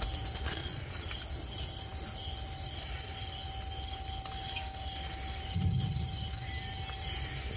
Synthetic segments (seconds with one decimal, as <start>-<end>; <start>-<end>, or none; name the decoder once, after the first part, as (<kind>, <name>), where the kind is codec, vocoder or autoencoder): 0.6-1.1 (vocoder, Vocos)